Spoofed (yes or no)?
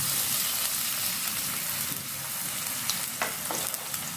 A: no